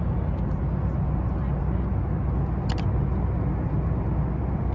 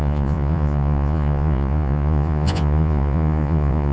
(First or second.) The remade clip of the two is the second